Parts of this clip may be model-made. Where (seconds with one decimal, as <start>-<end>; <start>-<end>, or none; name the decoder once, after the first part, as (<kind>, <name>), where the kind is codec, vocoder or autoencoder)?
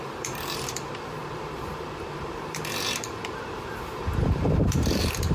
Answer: 0.0-5.3 (vocoder, BigVGAN v2)